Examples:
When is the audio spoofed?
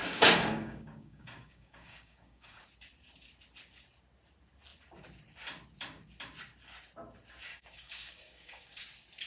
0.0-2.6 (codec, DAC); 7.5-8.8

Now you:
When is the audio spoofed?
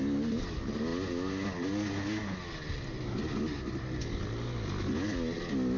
none